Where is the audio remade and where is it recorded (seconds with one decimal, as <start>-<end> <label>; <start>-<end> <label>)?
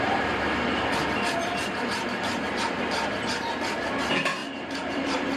0.0-4.4 recorded; 4.4-5.4 remade